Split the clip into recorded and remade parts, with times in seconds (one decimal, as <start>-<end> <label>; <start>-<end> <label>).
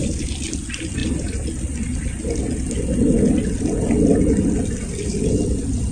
0.0-5.9 recorded